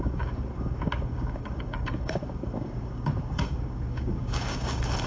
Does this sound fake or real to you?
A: fake